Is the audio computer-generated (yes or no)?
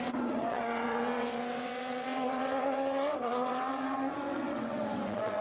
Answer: yes